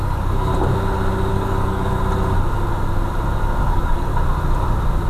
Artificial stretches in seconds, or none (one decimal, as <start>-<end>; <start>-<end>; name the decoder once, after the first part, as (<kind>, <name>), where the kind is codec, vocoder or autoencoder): 0.0-0.5 (codec, DAC); 1.3-2.0; 3.6-4.1